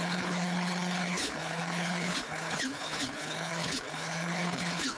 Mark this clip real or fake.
fake